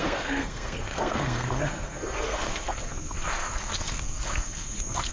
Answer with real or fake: fake